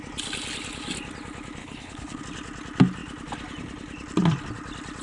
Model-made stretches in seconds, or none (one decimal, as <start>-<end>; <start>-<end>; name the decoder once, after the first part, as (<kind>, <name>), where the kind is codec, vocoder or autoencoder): 1.6-2.2 (codec, HILCodec)